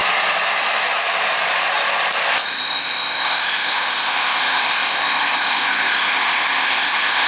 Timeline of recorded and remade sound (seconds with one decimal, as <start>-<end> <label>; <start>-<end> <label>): 0.0-2.3 recorded; 2.3-7.3 remade